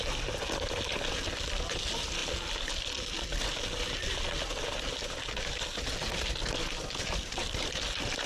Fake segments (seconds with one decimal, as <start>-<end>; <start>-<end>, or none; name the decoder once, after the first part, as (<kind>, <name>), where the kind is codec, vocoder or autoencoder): none